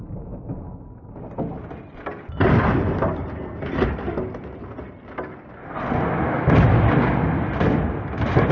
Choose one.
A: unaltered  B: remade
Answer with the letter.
A